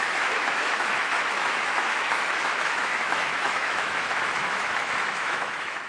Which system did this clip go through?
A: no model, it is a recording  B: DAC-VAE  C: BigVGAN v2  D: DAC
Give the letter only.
B